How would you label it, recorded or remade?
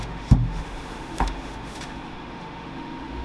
remade